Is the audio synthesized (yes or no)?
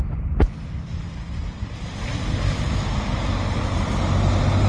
no